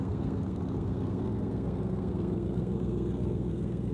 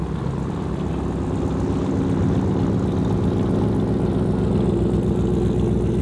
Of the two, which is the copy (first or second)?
first